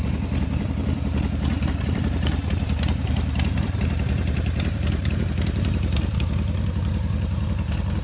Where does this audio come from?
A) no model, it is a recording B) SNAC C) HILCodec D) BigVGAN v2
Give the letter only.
D